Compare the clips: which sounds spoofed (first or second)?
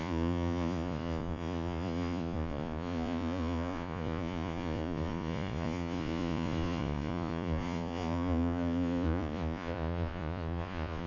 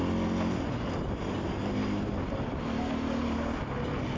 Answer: first